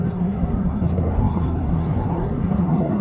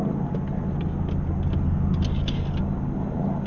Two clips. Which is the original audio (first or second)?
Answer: second